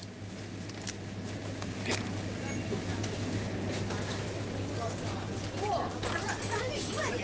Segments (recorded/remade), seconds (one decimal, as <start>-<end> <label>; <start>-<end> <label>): 0.0-7.2 recorded